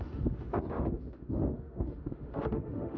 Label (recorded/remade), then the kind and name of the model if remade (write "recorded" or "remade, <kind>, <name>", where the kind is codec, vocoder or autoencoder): remade, autoencoder, DAC-VAE